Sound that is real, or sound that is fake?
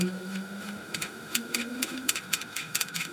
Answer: fake